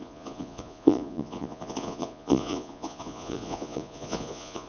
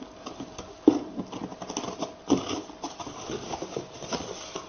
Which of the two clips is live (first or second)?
second